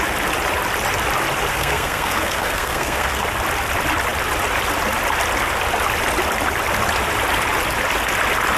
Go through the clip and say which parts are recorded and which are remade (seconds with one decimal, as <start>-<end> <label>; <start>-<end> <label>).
0.0-1.5 recorded; 1.5-3.2 remade; 3.2-8.6 recorded